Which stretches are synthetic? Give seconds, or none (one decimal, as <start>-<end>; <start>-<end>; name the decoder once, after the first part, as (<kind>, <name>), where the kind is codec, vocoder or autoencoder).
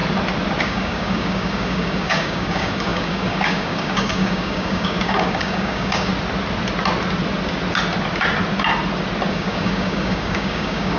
0.6-6.1 (codec, DAC); 9.3-11.0